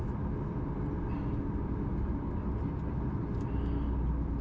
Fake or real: real